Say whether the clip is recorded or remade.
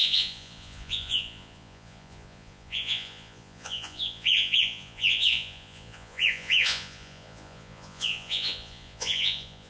remade